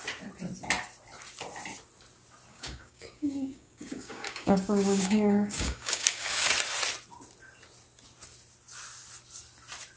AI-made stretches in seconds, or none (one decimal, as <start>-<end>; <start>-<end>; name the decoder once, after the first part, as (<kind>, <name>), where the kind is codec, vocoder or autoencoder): 2.5-6.5 (codec, DAC)